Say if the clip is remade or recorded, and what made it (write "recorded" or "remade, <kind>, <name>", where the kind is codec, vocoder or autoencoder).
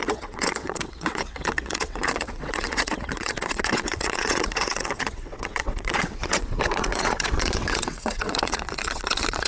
remade, vocoder, WaveNeXt